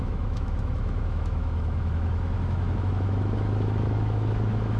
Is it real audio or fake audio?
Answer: fake